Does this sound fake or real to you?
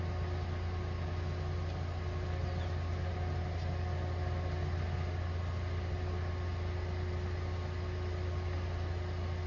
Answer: real